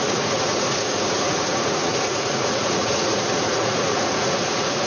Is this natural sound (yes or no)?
no